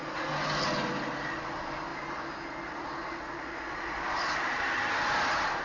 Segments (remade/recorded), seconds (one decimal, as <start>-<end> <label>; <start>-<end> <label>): 0.0-5.6 recorded